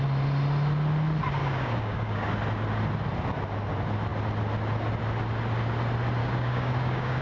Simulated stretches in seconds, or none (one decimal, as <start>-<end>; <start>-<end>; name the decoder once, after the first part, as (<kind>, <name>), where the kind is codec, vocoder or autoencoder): 1.4-2.3 (codec, DAC); 6.2-7.2